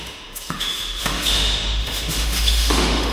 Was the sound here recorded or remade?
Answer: remade